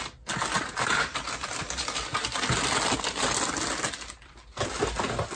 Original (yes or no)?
yes